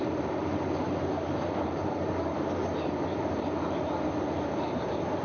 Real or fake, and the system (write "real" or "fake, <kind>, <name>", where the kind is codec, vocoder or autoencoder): fake, vocoder, BigVGAN v2